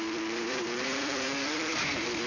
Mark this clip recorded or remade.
remade